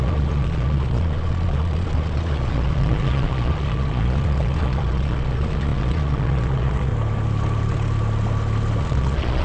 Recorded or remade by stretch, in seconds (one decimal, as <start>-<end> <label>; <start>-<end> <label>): 0.0-6.9 remade; 6.9-8.8 recorded; 8.8-9.4 remade